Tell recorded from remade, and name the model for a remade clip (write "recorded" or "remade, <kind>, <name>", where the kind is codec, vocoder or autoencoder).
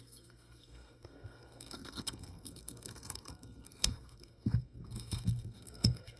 remade, codec, SNAC